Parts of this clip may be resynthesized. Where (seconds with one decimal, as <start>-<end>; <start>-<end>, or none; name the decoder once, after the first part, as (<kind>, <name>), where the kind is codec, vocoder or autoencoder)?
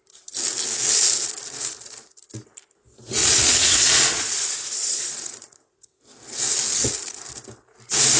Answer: 3.2-6.0 (vocoder, Vocos)